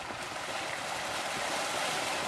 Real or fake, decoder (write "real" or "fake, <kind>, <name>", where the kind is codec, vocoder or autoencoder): real